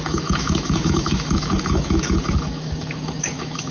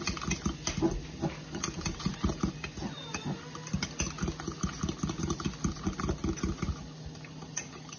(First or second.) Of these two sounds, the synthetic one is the first